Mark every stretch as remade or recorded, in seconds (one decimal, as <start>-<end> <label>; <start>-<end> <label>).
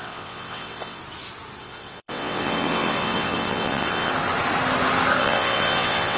0.0-1.0 remade; 1.0-1.6 recorded; 1.6-4.1 remade; 4.1-5.2 recorded; 5.2-6.2 remade